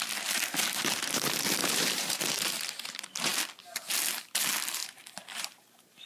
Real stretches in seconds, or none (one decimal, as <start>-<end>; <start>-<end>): 0.0-1.6; 2.2-4.8